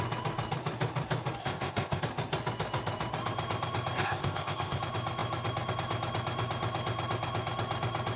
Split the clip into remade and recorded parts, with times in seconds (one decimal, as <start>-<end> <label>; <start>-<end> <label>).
0.0-1.4 recorded; 1.4-2.0 remade; 2.0-4.0 recorded; 4.0-4.8 remade; 4.8-8.2 recorded